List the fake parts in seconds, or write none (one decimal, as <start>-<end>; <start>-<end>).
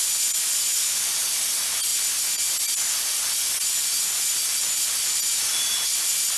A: none